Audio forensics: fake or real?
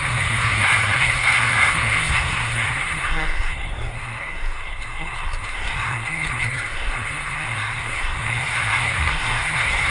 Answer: fake